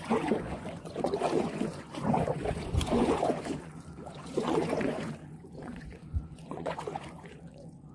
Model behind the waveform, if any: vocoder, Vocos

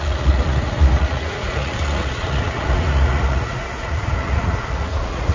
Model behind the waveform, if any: vocoder, Vocos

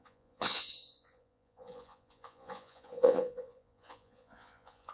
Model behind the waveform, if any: vocoder, Vocos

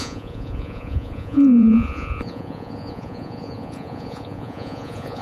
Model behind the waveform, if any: vocoder, Vocos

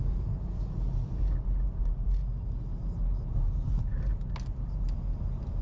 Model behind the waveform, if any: none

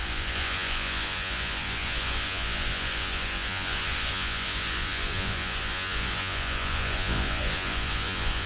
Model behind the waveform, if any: vocoder, Vocos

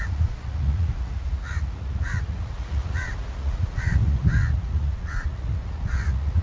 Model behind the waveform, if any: vocoder, Vocos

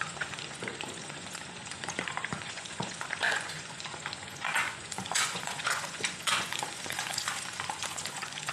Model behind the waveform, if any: vocoder, Vocos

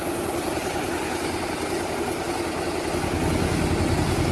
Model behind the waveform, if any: none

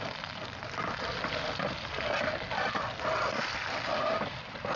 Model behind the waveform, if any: none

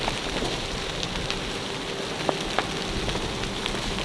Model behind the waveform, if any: none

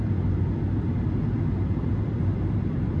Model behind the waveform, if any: none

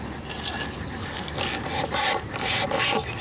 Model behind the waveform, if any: none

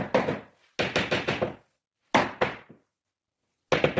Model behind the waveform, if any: none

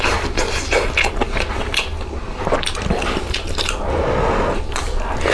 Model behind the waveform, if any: none